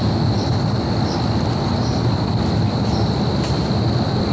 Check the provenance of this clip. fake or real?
fake